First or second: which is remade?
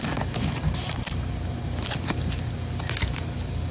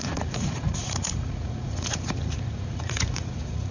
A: second